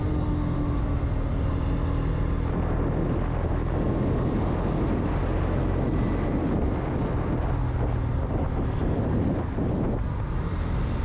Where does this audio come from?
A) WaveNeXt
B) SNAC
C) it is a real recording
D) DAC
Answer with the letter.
C